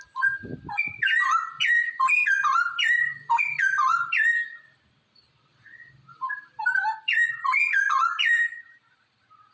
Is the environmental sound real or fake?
real